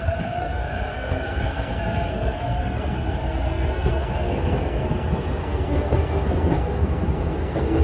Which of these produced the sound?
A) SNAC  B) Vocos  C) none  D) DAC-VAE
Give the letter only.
A